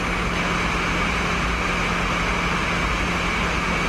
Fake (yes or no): no